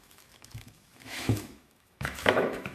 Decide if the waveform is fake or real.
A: fake